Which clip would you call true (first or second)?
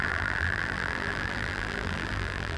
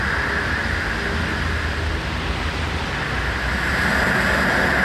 second